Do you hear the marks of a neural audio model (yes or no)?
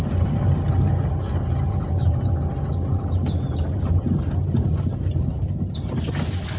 no